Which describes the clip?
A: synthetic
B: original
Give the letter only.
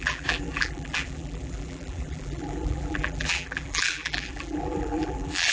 A